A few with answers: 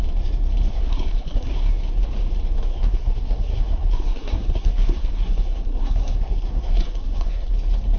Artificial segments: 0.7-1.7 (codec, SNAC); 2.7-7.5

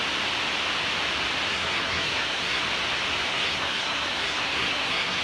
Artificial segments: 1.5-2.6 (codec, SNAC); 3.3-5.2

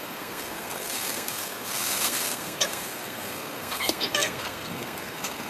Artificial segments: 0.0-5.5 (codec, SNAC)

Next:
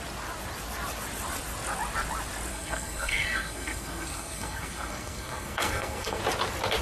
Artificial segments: 2.5-6.2 (codec, SNAC)